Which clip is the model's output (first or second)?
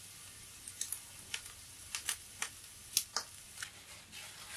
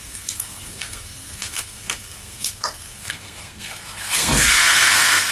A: second